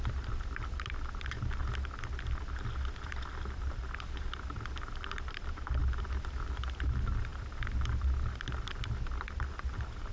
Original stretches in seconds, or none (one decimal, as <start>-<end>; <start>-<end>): 0.0-10.1